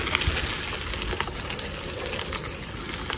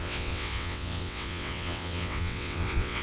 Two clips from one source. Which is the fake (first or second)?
second